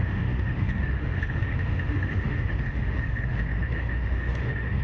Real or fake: fake